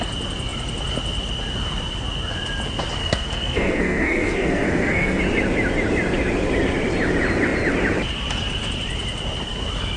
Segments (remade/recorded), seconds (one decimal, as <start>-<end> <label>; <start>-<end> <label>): 0.0-3.0 recorded; 3.0-5.2 remade; 5.2-10.0 recorded